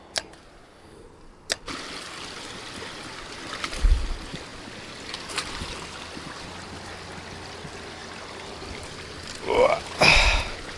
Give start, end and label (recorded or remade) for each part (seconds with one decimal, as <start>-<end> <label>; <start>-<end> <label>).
0.0-10.8 recorded

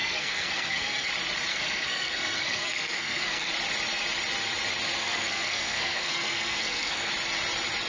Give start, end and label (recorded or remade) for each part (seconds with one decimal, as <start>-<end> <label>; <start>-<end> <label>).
0.0-1.1 remade; 1.1-1.5 recorded; 1.5-3.5 remade; 3.5-5.0 recorded; 5.0-7.1 remade; 7.1-7.9 recorded

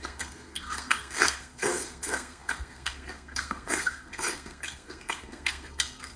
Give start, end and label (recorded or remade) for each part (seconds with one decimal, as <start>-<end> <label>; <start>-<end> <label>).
0.0-6.2 remade

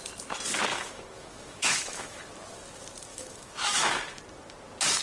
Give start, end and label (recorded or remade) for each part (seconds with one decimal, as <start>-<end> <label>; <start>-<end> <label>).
0.0-0.7 recorded; 0.7-2.2 remade; 2.2-3.1 recorded; 3.1-4.2 remade; 4.2-5.0 recorded

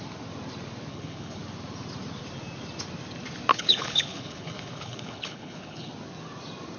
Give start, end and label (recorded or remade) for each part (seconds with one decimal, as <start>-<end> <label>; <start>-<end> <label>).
0.0-0.9 recorded; 0.9-1.4 remade; 1.4-3.5 recorded; 3.5-5.9 remade; 5.9-6.8 recorded

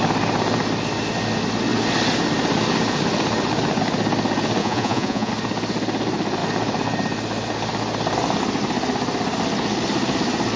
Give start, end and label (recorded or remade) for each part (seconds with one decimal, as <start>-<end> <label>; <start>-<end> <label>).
0.0-4.6 recorded; 4.6-5.3 remade; 5.3-10.6 recorded